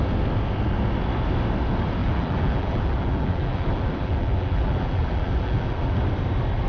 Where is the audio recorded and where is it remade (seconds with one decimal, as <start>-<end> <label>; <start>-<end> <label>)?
0.0-2.0 recorded; 2.0-6.0 remade; 6.0-6.7 recorded